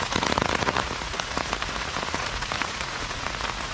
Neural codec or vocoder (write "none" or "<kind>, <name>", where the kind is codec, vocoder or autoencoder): vocoder, Vocos